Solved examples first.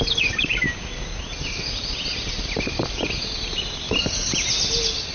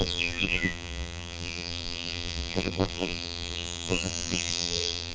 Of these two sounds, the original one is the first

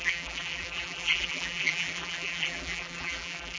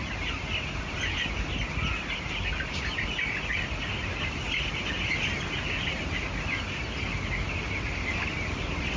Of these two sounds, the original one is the second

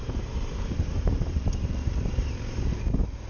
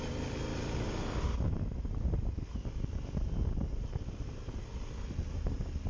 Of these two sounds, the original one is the second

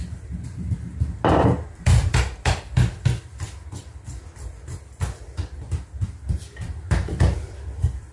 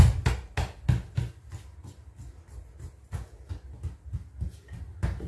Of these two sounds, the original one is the second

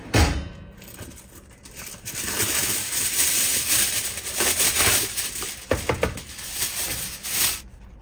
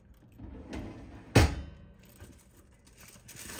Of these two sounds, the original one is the second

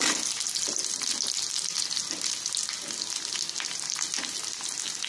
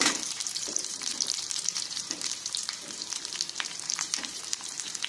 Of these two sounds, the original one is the first